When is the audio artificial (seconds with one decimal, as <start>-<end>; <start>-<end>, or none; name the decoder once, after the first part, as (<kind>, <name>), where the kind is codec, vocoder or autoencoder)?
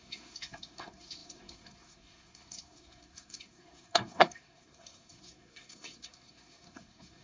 0.0-7.2 (codec, SNAC)